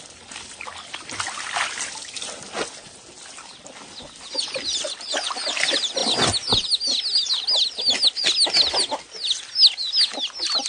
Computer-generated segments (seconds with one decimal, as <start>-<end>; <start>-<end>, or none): none